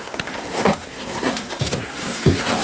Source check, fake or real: fake